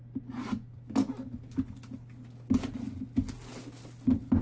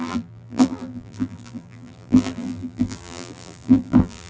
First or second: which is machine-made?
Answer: second